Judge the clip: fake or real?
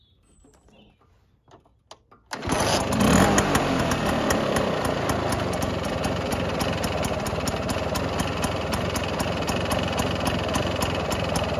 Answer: real